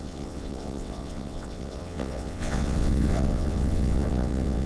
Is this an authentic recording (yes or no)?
no